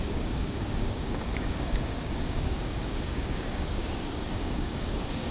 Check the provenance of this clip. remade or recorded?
remade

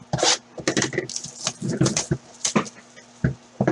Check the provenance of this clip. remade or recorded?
recorded